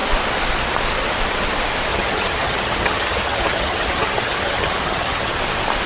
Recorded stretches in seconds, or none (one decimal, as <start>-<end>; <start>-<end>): 0.0-1.9; 5.4-5.9